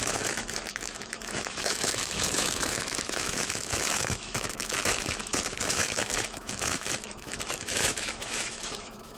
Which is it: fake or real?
fake